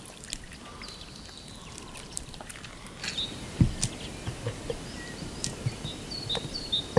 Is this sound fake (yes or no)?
no